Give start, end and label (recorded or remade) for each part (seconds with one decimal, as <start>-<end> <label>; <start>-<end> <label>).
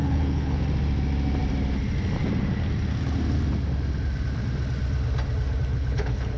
0.0-0.6 remade; 0.6-5.7 recorded; 5.7-6.4 remade